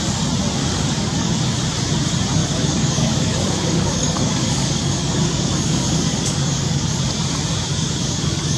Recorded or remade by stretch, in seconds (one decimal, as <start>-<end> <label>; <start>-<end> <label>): 0.0-0.6 recorded; 0.6-1.4 remade; 1.4-2.4 recorded; 2.4-7.0 remade; 7.0-7.7 recorded; 7.7-8.6 remade